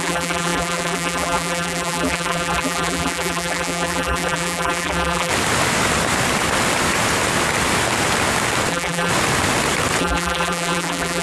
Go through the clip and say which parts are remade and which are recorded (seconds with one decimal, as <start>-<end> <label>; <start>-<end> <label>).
0.0-5.3 remade; 5.3-8.7 recorded; 8.7-9.1 remade; 9.1-10.0 recorded; 10.0-11.2 remade